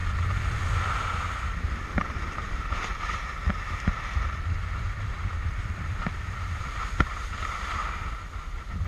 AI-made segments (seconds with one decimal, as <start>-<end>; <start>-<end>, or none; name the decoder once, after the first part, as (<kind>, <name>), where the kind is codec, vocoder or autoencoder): 2.5-2.9 (vocoder, BigVGAN v2); 5.1-7.8